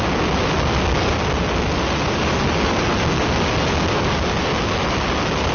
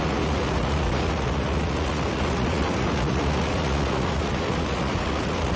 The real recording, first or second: first